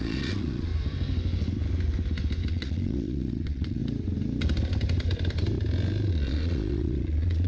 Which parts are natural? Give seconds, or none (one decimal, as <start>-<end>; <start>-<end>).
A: 0.7-2.5; 3.8-6.1